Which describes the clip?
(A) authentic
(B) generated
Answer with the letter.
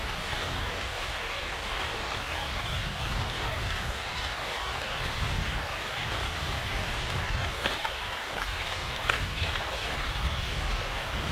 B